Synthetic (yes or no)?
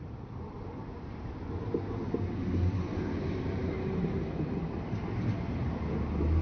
no